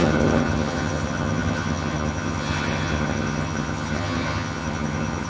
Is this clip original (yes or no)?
no